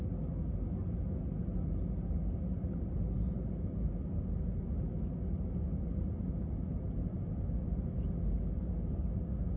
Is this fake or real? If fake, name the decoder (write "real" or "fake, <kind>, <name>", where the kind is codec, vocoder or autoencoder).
real